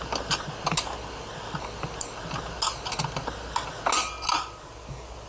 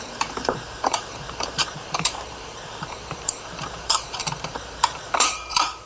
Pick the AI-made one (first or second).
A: second